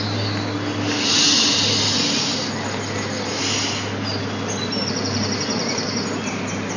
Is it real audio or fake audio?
real